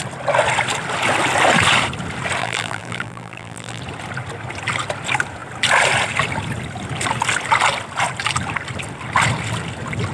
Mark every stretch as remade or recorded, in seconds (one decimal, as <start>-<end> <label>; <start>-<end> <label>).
0.0-2.4 recorded; 2.4-3.8 remade; 3.8-10.1 recorded